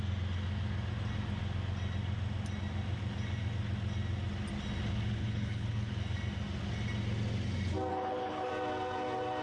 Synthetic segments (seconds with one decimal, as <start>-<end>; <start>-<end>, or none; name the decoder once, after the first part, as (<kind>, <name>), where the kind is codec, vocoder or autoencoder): 5.2-5.9 (codec, HILCodec); 7.9-8.5